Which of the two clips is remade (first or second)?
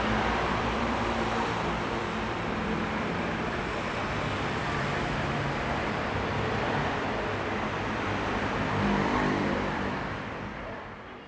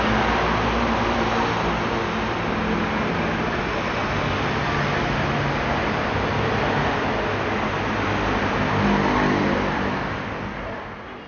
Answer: first